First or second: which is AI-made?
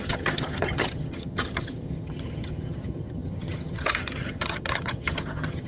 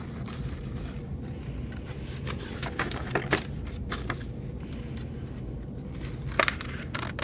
first